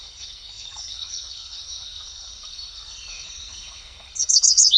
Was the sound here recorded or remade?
remade